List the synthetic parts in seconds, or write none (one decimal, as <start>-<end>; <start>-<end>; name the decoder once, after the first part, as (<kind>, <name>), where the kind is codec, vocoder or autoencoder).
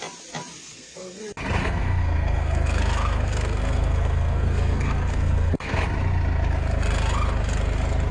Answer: 0.6-1.2 (codec, SNAC); 1.6-5.8